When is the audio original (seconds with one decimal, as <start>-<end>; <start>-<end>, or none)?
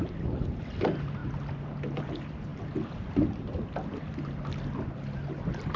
0.0-5.8